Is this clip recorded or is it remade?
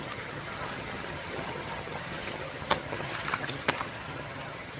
remade